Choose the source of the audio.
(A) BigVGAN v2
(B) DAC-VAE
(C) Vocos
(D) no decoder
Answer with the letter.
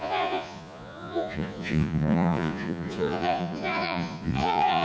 C